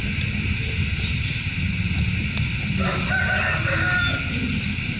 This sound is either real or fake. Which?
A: real